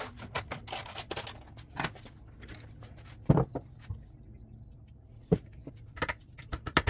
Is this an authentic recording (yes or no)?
yes